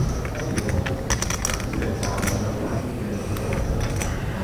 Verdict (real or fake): real